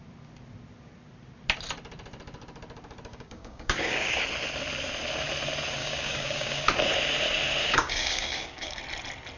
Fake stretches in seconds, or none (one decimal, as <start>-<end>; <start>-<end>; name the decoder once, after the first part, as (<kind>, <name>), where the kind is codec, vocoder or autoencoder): 3.1-4.2 (codec, DAC); 5.8-6.6; 7.6-8.8